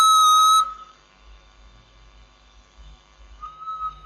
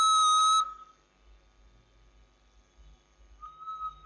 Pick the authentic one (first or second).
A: second